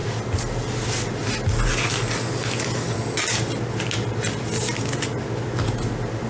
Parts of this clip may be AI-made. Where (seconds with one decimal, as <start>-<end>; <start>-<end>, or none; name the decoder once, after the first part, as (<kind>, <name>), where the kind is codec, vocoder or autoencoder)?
none